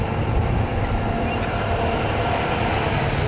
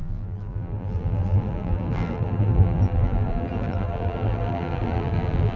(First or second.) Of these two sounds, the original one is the first